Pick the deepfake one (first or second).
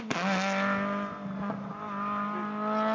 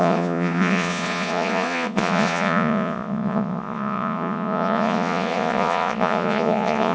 second